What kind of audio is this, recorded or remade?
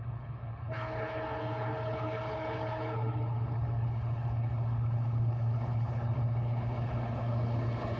remade